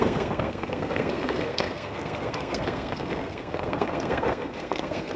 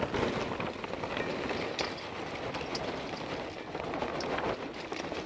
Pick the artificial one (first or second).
first